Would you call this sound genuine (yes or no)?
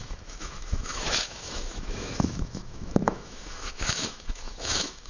no